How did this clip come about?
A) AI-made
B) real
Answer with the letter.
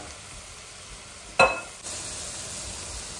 B